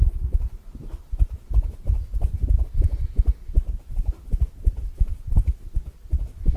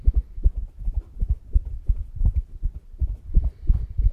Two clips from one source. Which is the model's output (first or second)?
second